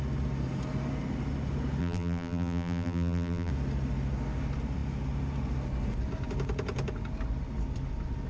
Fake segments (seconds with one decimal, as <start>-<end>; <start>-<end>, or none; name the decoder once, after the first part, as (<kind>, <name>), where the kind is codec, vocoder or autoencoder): 1.8-3.5 (vocoder, BigVGAN v2)